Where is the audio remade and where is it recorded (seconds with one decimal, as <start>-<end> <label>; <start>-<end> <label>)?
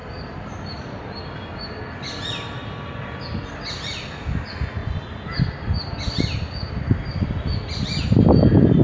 0.0-1.0 remade; 1.0-2.6 recorded; 2.6-3.5 remade; 3.5-8.8 recorded